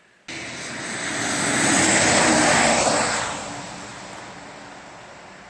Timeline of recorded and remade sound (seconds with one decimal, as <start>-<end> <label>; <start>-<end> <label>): 0.0-5.5 recorded